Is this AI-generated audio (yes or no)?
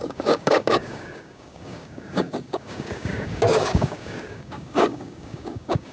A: yes